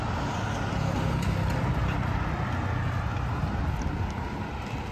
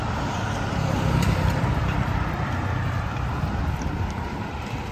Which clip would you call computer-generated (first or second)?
second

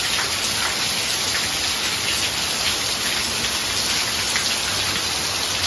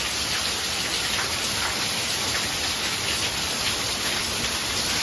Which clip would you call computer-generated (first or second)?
second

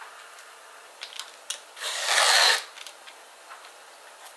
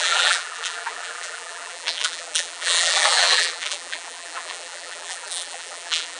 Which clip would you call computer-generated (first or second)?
second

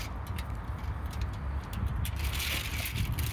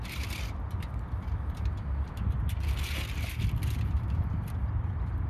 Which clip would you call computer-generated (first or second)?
second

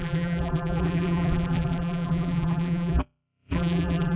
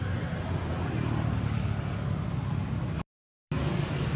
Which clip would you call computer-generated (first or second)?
first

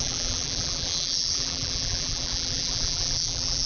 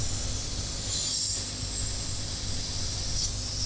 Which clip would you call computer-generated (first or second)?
first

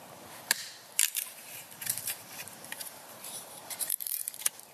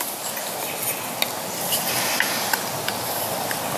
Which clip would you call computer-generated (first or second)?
first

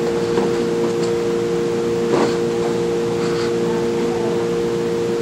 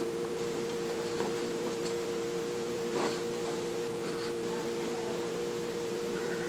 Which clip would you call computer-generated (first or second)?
second